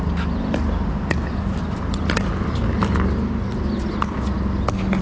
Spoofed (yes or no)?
no